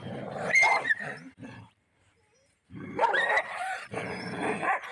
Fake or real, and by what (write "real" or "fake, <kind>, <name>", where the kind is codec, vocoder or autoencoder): fake, vocoder, BigVGAN v2